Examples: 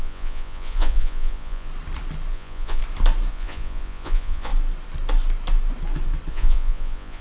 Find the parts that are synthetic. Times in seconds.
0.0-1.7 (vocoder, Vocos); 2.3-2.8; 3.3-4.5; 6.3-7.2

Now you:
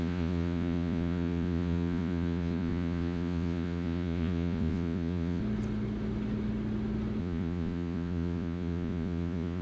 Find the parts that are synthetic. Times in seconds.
0.0-5.4 (vocoder, Vocos); 7.2-9.6

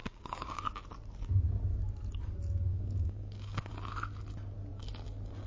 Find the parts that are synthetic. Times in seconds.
0.0-0.7 (codec, DAC); 2.7-3.7

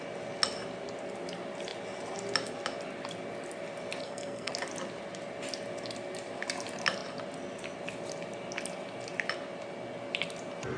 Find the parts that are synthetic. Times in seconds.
4.0-4.5 (codec, SNAC)

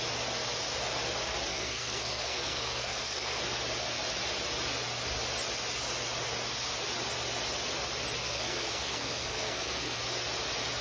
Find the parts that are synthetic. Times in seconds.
1.5-3.4 (codec, SNAC); 8.2-10.0

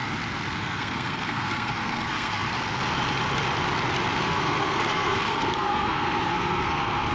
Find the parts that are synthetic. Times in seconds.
0.5-2.5 (codec, SNAC); 4.2-7.1

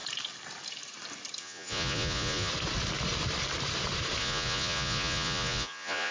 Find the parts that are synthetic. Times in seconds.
1.4-2.5 (vocoder, Vocos); 4.2-6.1

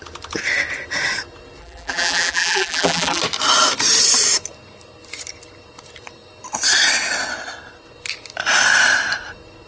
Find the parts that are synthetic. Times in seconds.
1.6-3.2 (vocoder, BigVGAN v2)